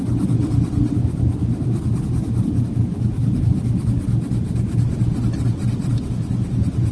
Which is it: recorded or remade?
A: recorded